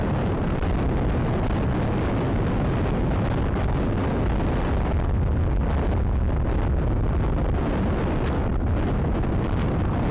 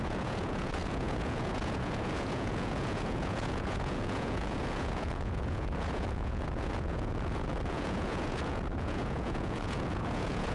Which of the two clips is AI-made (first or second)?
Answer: second